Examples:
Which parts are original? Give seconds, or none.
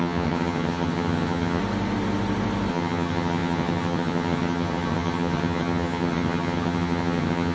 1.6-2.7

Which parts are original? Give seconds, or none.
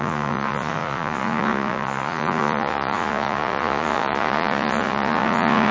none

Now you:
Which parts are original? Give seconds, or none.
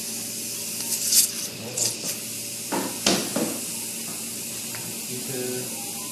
0.0-6.1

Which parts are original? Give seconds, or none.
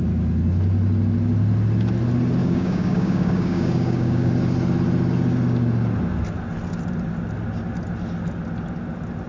0.0-2.4; 4.3-9.3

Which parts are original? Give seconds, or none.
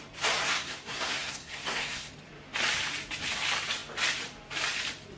0.0-0.4; 2.1-5.2